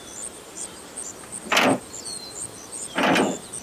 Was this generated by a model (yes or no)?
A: no